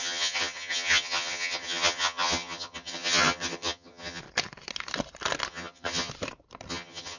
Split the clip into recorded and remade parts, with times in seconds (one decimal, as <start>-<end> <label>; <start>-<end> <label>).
0.0-4.2 remade; 4.2-5.5 recorded; 5.5-6.1 remade; 6.1-6.7 recorded; 6.7-7.2 remade

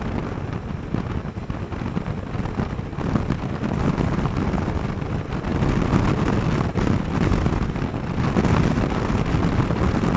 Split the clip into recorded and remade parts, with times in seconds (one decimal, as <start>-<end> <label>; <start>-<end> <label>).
0.0-10.2 recorded

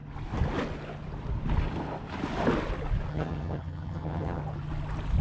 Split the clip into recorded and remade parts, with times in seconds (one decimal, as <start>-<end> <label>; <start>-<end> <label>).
0.0-3.1 recorded; 3.1-4.4 remade; 4.4-5.2 recorded

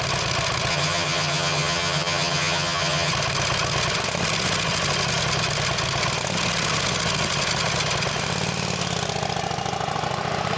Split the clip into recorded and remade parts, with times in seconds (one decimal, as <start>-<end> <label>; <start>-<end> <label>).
0.0-0.7 recorded; 0.7-3.1 remade; 3.1-10.6 recorded

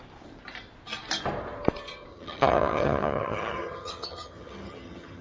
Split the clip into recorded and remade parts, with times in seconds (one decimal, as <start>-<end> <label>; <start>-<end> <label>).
0.0-2.1 recorded; 2.1-5.2 remade